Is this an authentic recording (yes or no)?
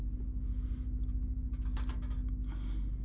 yes